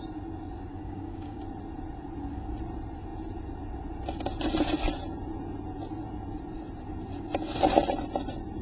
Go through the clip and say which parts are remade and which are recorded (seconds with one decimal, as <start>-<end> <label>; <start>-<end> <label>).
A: 0.0-0.7 recorded; 0.7-1.4 remade; 1.4-8.6 recorded